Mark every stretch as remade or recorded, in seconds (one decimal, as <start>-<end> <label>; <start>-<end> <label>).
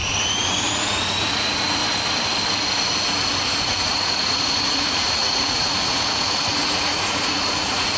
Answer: 0.0-1.8 remade; 1.8-3.6 recorded; 3.6-8.0 remade